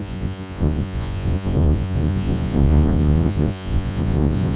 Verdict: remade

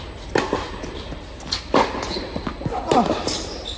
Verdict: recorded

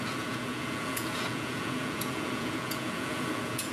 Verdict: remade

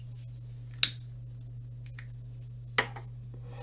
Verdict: recorded